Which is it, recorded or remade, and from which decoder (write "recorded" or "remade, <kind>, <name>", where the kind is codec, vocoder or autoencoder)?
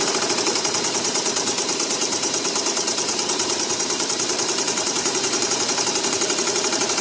remade, vocoder, BigVGAN v2